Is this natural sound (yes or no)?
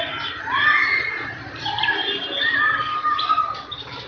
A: yes